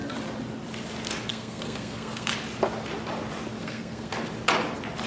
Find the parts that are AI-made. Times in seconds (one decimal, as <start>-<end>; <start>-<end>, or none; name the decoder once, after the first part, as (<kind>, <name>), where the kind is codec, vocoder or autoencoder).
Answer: 1.3-2.3 (codec, SNAC); 3.6-4.1